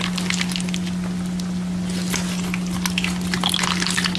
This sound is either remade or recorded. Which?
recorded